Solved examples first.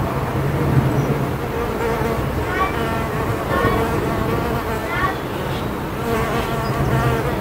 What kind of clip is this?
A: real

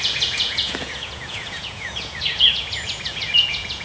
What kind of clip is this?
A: fake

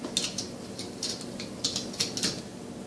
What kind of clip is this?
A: real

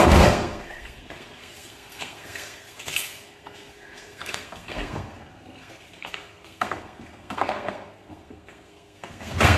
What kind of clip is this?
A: fake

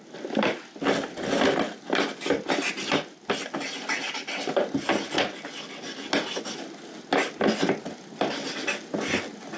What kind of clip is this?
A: real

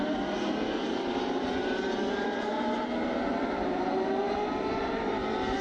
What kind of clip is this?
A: fake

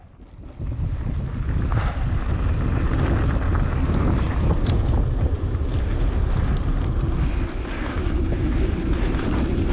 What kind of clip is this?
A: real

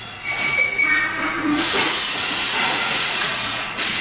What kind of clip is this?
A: fake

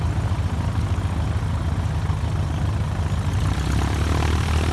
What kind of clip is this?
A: real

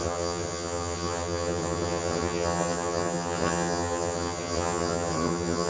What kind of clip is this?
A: fake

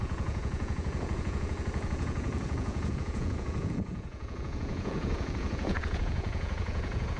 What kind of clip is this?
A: fake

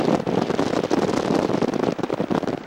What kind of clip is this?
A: real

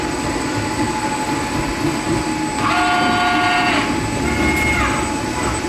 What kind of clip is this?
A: real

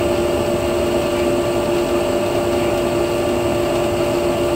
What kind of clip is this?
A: real